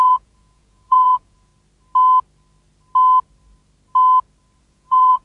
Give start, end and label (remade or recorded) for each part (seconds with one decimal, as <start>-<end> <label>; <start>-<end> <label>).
0.0-1.5 remade; 1.5-4.6 recorded; 4.6-5.2 remade